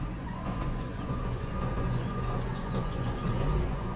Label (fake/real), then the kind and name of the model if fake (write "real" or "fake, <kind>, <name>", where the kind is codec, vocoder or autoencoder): fake, vocoder, Vocos